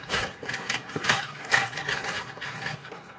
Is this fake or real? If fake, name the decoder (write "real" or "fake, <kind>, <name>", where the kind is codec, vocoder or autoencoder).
fake, codec, SNAC